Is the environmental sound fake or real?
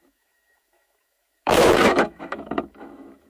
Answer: fake